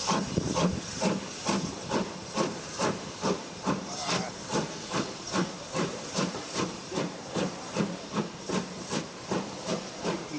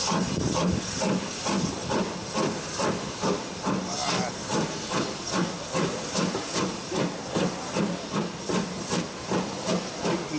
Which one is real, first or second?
second